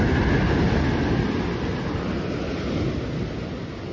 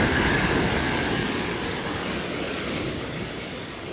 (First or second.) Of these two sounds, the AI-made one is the second